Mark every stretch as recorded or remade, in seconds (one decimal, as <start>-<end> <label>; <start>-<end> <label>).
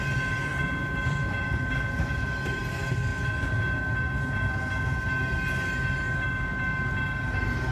0.0-7.7 recorded